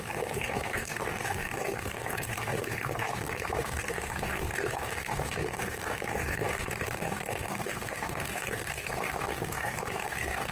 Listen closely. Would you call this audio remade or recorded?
remade